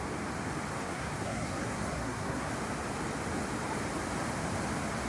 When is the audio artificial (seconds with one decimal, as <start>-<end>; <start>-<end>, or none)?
0.7-2.5